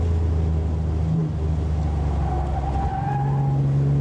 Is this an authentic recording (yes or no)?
yes